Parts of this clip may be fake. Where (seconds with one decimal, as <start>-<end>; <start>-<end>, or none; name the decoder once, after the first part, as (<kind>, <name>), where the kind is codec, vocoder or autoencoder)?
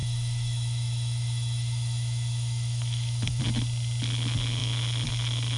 0.0-3.4 (autoencoder, DAC-VAE)